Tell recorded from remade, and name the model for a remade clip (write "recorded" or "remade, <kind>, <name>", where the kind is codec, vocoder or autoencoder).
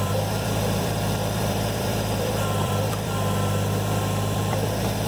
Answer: remade, vocoder, BigVGAN v2